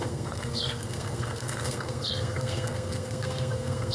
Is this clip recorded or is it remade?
remade